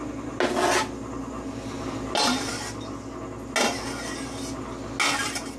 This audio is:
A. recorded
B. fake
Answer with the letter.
A